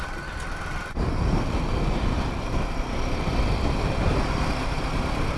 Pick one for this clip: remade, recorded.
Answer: remade